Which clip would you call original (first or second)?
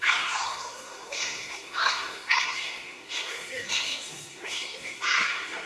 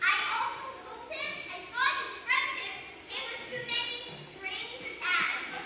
second